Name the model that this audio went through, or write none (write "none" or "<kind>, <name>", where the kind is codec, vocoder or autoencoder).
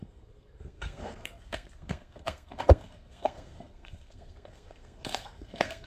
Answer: codec, SNAC